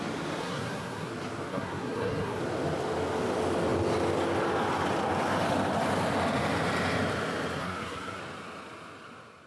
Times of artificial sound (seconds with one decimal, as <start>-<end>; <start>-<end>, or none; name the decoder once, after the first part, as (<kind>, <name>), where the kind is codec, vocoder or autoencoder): 0.4-1.1 (codec, SNAC); 1.5-2.4; 7.6-8.2